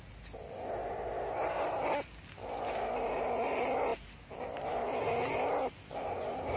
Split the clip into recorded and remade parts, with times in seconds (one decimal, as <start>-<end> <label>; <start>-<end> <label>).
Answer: 0.0-6.6 recorded